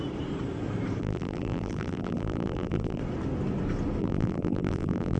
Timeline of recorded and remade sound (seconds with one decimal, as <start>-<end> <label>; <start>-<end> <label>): 0.0-1.0 recorded; 1.0-3.0 remade; 3.0-4.0 recorded; 4.0-5.2 remade